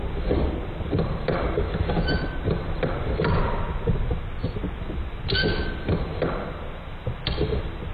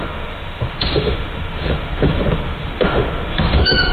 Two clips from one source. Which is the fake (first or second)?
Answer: second